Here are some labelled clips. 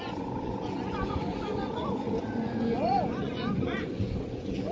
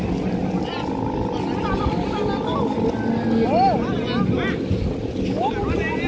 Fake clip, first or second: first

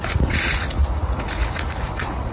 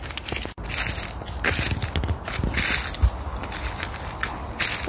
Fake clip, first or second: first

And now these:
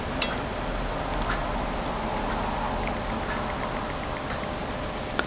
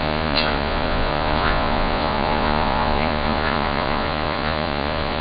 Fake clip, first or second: second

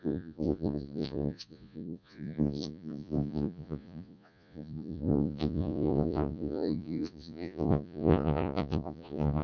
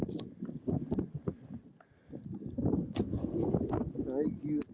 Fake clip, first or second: first